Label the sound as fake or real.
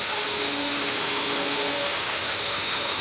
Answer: fake